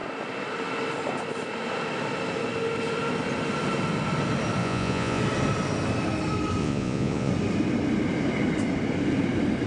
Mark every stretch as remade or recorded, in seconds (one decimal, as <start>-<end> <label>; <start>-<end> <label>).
0.0-4.6 recorded; 4.6-5.2 remade; 5.2-6.6 recorded; 6.6-7.3 remade; 7.3-9.7 recorded